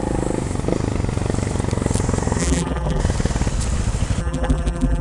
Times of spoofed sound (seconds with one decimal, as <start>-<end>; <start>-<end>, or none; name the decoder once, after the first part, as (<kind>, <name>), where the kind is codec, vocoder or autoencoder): 2.4-3.0 (vocoder, BigVGAN v2); 4.2-5.0